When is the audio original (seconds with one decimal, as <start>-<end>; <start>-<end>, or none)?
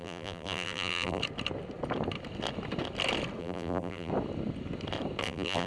1.2-3.4; 4.1-5.2